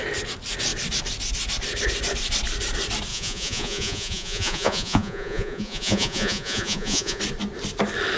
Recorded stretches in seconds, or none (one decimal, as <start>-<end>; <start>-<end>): 0.0-3.1; 7.2-8.2